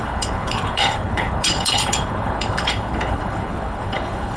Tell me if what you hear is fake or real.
fake